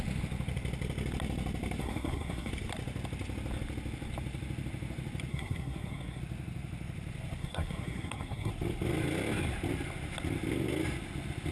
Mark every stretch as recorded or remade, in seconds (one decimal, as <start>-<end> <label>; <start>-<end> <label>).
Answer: 0.0-1.8 recorded; 1.8-2.5 remade; 2.5-5.3 recorded; 5.3-6.2 remade; 6.2-7.4 recorded; 7.4-8.5 remade; 8.5-11.5 recorded